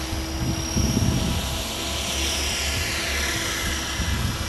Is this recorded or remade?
recorded